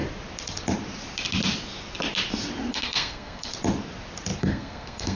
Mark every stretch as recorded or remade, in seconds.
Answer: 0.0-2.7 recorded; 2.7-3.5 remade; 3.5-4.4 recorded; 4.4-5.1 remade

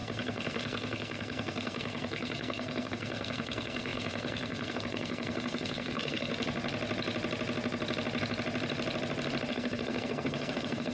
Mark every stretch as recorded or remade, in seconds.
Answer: 0.0-6.3 remade; 6.3-9.5 recorded; 9.5-10.9 remade

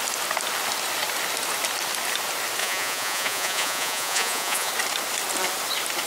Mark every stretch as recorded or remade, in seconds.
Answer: 0.0-2.6 recorded; 2.6-4.7 remade; 4.7-6.1 recorded

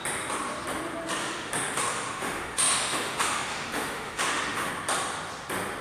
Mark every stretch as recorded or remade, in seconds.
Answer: 0.0-1.2 recorded; 1.2-4.7 remade; 4.7-5.8 recorded